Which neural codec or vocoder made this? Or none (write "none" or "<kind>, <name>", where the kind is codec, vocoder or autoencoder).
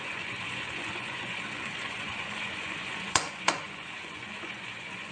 vocoder, Vocos